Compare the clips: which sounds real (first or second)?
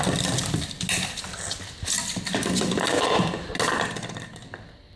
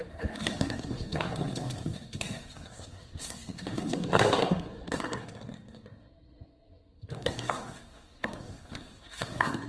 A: first